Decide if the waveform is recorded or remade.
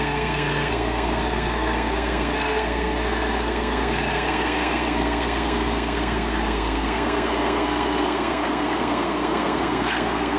remade